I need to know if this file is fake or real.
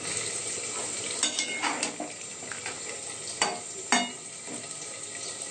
real